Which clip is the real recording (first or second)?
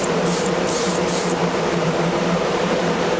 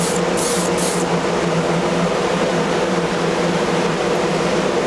second